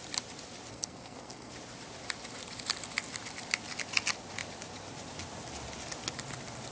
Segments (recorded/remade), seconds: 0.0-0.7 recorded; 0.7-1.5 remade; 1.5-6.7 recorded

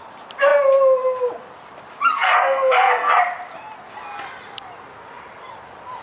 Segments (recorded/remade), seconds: 0.0-2.1 recorded; 2.1-3.1 remade; 3.1-6.0 recorded

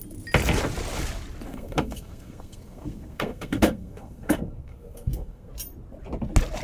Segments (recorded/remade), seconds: 0.0-1.5 recorded; 1.5-5.5 remade; 5.5-6.6 recorded

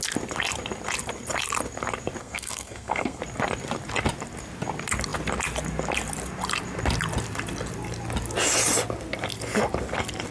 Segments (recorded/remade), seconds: 0.0-2.2 recorded; 2.2-3.2 remade; 3.2-10.3 recorded

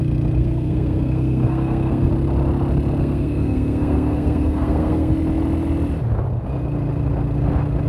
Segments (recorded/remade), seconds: 0.0-0.4 recorded; 0.4-2.1 remade; 2.1-3.0 recorded; 3.0-5.1 remade; 5.1-7.9 recorded

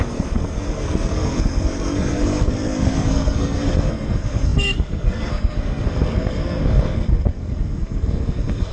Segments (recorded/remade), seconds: 0.0-8.7 remade

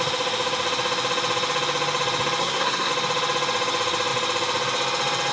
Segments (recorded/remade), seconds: 0.0-2.4 recorded; 2.4-2.9 remade; 2.9-5.3 recorded

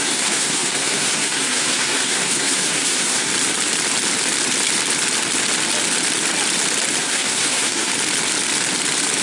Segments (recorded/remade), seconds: 0.0-3.3 remade; 3.3-7.0 recorded; 7.0-7.9 remade; 7.9-9.2 recorded